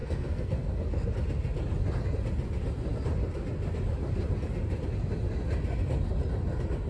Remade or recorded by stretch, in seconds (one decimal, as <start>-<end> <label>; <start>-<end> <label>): 0.0-1.1 remade; 1.1-6.9 recorded

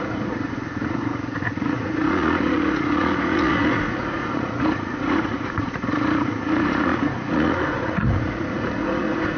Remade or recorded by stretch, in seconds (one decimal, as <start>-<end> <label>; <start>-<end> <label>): 0.0-9.4 remade